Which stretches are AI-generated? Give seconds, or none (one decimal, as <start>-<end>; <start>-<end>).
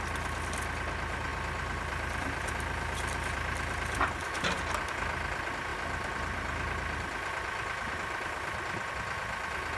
1.3-4.9; 5.7-8.9